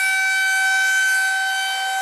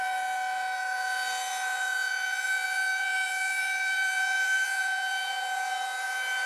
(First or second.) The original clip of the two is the first